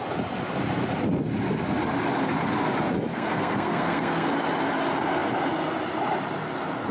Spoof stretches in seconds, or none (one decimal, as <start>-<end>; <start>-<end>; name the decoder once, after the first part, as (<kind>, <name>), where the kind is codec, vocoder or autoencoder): 3.1-4.3 (codec, SNAC)